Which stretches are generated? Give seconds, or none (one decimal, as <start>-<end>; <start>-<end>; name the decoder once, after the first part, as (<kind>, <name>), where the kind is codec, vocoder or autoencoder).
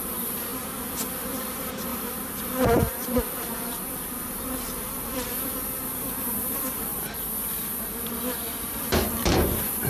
0.0-0.5 (vocoder, BigVGAN v2); 1.4-6.9; 8.6-9.9